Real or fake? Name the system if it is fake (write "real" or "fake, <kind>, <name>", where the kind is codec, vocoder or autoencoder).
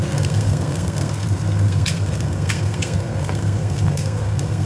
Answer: fake, codec, SNAC